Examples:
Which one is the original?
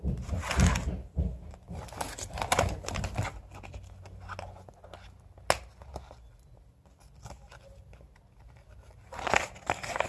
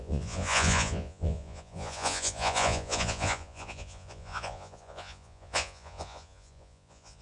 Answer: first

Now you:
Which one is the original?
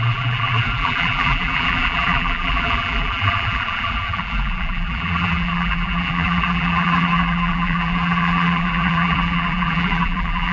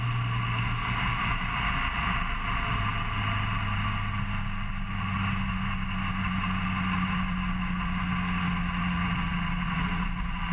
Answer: second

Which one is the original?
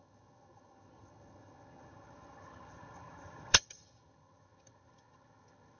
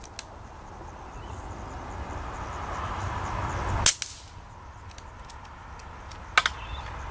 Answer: second